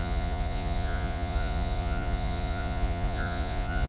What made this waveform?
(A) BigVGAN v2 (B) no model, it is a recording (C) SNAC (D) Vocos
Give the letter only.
D